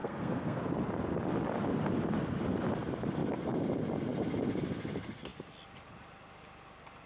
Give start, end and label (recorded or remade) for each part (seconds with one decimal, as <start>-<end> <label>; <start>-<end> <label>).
0.0-0.6 remade; 0.6-7.1 recorded